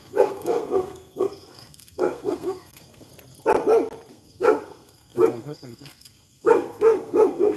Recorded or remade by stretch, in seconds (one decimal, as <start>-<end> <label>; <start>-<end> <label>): 0.0-3.1 remade; 3.1-4.1 recorded; 4.1-7.6 remade

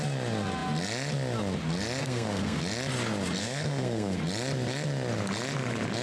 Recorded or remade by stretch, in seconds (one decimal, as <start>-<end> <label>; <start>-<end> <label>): 0.0-2.0 recorded; 2.0-2.6 remade; 2.6-3.4 recorded; 3.4-4.2 remade; 4.2-6.0 recorded

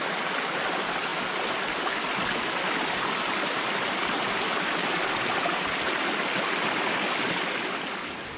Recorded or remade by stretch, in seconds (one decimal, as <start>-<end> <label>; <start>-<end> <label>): 0.0-8.4 recorded